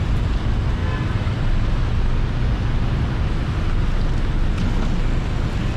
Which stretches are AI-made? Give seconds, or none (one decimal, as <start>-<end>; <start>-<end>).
none